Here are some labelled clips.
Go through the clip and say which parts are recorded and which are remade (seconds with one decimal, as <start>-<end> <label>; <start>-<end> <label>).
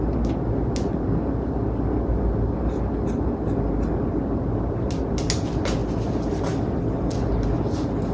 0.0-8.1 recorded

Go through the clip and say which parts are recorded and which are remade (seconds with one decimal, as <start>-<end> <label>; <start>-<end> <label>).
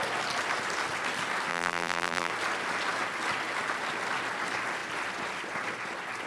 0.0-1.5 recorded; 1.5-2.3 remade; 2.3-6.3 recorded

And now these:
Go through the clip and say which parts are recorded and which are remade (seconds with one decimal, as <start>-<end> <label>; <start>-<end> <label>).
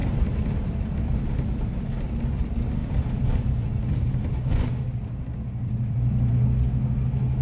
0.0-1.2 remade; 1.2-2.8 recorded; 2.8-6.3 remade; 6.3-7.4 recorded